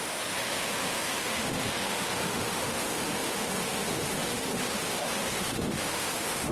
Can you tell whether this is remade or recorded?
remade